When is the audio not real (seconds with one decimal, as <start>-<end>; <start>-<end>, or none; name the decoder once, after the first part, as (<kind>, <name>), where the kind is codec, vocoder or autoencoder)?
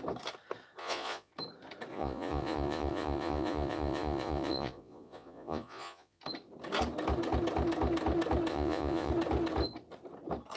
0.8-1.3 (vocoder, Vocos); 1.9-6.2; 8.5-9.1